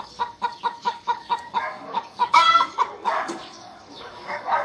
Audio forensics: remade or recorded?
remade